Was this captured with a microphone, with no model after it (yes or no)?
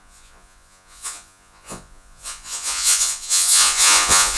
no